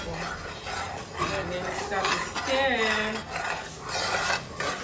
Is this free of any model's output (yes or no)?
yes